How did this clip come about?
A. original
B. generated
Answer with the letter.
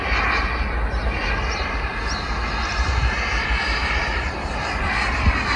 A